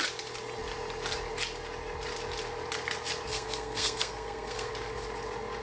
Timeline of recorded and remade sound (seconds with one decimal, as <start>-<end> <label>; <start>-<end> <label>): 0.0-3.3 recorded; 3.3-4.7 remade; 4.7-5.6 recorded